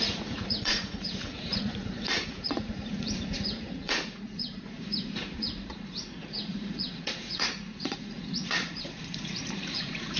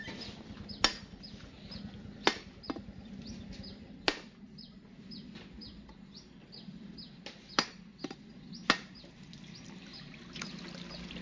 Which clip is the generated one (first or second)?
first